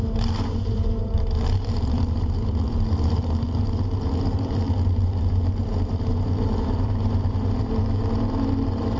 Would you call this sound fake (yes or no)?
yes